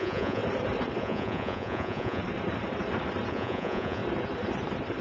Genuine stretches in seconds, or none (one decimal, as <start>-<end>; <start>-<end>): 0.4-1.0; 2.2-3.3; 4.0-5.0